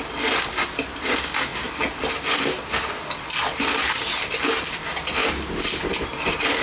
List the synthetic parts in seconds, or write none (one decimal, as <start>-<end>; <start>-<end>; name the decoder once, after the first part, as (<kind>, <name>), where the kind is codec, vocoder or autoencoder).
none